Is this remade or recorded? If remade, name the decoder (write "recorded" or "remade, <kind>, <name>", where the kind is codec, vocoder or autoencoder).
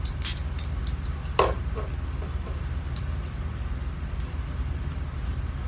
recorded